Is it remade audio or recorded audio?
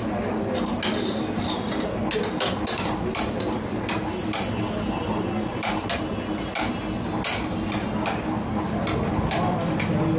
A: recorded